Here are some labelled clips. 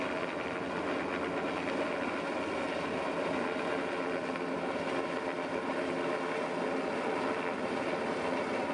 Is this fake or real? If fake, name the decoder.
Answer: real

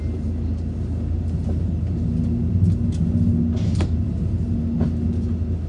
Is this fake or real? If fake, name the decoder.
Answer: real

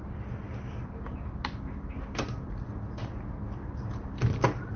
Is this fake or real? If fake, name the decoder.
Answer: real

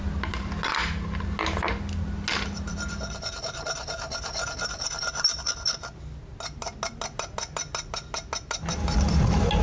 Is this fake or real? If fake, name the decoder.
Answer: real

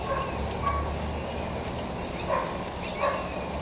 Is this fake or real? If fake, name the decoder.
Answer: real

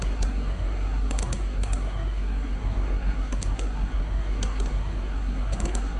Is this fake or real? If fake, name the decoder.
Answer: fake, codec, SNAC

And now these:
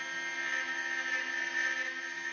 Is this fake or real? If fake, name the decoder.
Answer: real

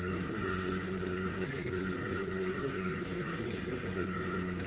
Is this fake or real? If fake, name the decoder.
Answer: fake, codec, SNAC